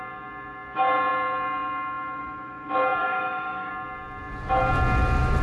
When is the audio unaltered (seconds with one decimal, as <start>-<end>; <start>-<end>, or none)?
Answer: 0.0-3.0; 3.7-5.4